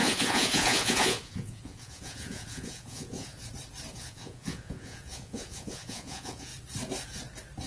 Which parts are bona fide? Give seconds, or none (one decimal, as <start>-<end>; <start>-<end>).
3.4-3.9; 6.5-7.7